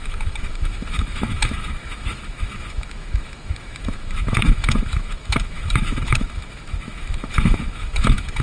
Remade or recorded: remade